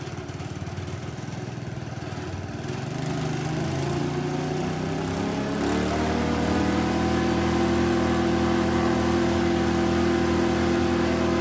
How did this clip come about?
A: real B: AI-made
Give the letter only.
A